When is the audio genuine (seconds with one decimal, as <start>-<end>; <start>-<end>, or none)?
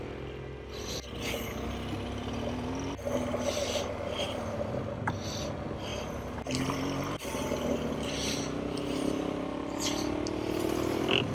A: 0.0-11.3